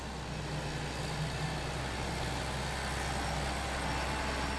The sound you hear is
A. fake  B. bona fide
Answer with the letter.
B